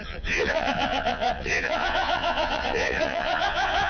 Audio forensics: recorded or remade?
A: remade